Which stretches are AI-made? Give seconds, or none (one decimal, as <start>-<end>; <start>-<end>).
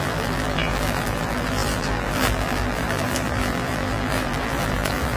0.0-5.2